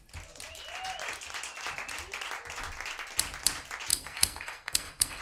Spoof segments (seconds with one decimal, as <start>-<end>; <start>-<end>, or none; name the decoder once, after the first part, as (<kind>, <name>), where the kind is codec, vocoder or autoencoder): 3.9-5.2 (codec, SNAC)